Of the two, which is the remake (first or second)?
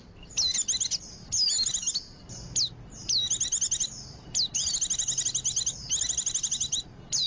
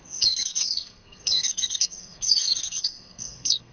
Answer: second